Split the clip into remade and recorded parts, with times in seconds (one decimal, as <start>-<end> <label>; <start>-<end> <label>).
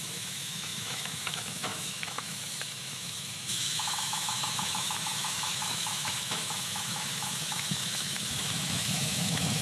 0.0-9.6 remade